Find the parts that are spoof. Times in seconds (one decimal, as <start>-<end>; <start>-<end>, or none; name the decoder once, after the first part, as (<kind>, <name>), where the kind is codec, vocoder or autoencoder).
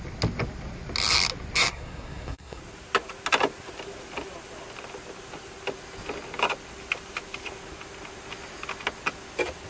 1.7-2.6 (codec, SNAC)